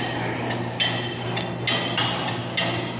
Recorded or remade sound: recorded